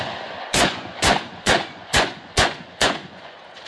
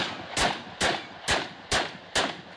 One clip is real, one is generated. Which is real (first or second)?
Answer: second